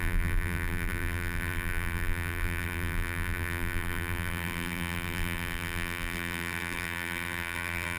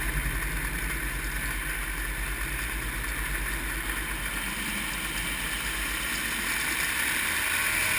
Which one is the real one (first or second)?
second